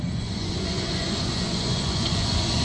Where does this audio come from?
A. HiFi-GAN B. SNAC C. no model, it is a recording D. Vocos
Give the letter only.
D